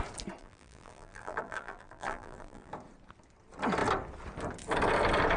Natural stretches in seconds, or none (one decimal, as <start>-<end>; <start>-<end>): 0.0-0.4; 2.7-5.4

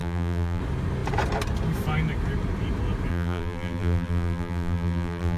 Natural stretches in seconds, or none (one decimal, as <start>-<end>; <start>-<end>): 0.6-3.1

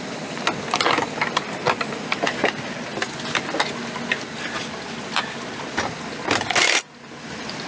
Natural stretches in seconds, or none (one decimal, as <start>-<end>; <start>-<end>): 0.0-7.7

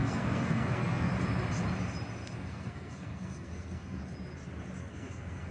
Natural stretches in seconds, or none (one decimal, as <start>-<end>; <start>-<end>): 1.1-2.5; 4.0-4.8

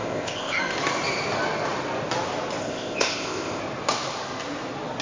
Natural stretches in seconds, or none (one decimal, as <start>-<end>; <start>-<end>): 0.6-2.6; 3.6-5.0

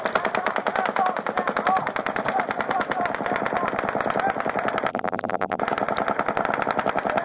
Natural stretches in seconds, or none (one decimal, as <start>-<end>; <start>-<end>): 0.0-4.9; 5.6-7.2

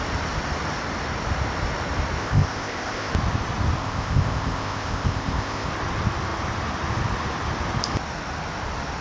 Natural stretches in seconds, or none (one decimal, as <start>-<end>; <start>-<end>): 0.0-2.2; 3.1-3.8; 5.7-9.0